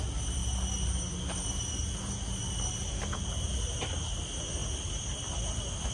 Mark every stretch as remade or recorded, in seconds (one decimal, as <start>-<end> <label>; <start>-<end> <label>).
0.0-5.9 recorded

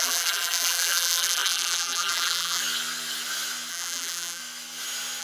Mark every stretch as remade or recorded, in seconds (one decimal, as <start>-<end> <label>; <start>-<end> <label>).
0.0-2.6 remade; 2.6-3.7 recorded; 3.7-4.4 remade; 4.4-5.2 recorded